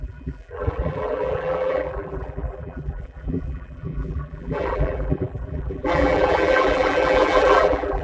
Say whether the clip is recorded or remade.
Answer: remade